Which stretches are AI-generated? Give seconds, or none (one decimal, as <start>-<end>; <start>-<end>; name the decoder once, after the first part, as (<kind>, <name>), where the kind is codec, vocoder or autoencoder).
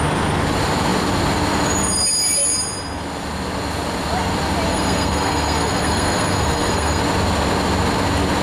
4.7-7.0 (codec, SNAC)